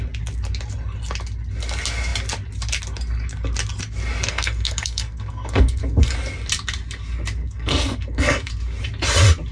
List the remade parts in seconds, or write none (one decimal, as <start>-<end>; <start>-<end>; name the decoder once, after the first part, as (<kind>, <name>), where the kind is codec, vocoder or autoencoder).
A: 4.3-6.1 (codec, SNAC); 7.4-8.5